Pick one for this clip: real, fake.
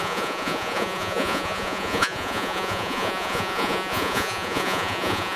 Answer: fake